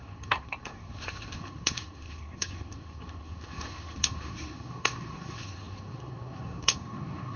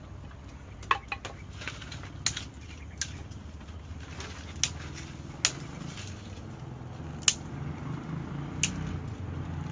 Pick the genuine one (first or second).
second